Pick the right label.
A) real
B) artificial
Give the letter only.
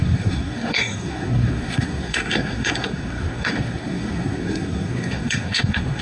B